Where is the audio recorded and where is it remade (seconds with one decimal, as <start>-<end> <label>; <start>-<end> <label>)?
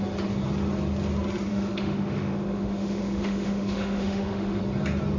0.0-1.5 recorded; 1.5-4.6 remade; 4.6-5.2 recorded